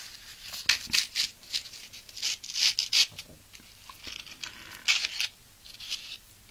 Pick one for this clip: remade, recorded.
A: recorded